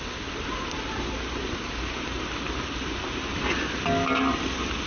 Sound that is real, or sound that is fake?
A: real